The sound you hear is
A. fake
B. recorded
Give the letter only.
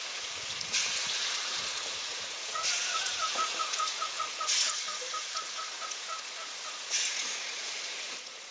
A